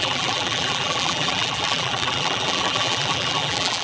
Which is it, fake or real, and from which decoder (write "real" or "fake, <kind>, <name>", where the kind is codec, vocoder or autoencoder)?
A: fake, vocoder, BigVGAN v2